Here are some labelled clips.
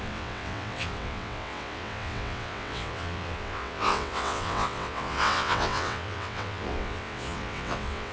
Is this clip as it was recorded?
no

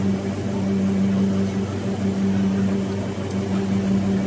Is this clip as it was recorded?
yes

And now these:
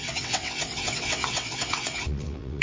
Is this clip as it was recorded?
no